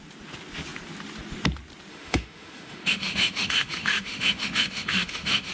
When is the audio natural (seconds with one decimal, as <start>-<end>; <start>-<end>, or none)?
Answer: 0.0-1.9